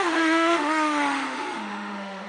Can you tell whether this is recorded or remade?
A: remade